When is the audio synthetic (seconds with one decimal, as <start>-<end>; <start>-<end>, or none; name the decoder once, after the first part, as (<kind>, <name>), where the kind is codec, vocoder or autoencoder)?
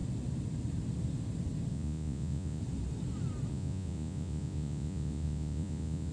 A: 1.7-2.6 (vocoder, Vocos); 3.5-6.1